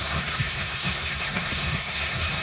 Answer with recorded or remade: remade